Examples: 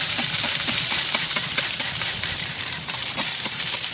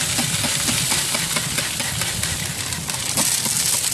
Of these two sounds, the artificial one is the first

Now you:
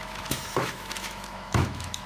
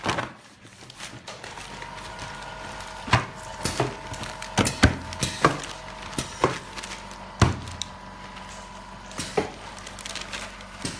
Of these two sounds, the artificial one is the first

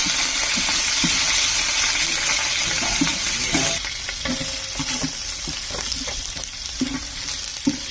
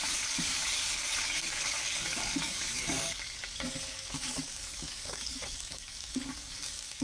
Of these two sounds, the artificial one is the second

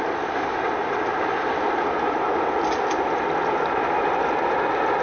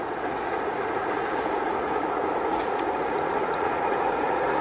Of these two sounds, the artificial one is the second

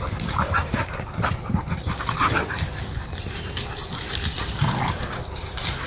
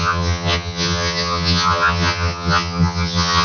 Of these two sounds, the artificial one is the second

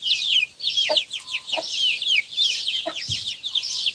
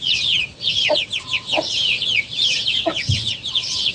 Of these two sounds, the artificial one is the second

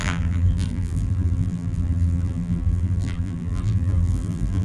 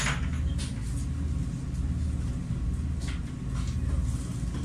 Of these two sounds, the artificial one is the first